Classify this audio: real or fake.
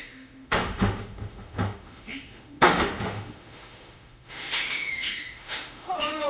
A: fake